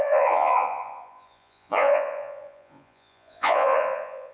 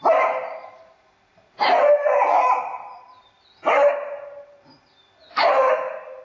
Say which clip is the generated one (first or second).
first